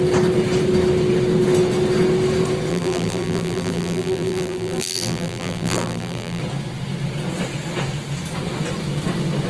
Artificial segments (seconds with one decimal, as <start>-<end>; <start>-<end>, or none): 2.7-6.4